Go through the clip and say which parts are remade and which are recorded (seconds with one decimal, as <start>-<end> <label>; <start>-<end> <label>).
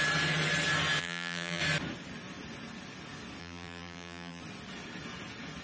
0.0-1.0 recorded; 1.0-1.6 remade; 1.6-3.4 recorded; 3.4-4.4 remade; 4.4-5.6 recorded